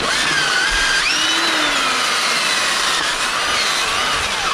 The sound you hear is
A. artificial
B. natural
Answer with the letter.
B